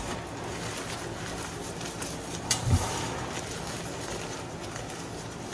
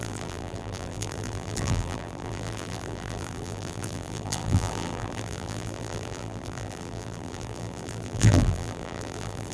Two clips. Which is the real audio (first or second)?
first